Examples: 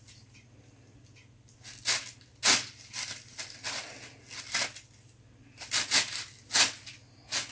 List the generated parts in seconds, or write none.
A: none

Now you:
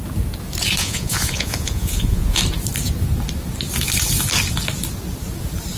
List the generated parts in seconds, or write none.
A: 0.8-2.4 (vocoder, Vocos)

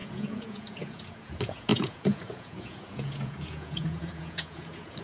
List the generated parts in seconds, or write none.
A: 0.0-5.0 (vocoder, Vocos)

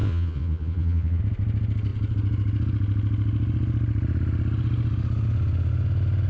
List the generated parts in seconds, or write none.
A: 0.0-1.2 (vocoder, Vocos)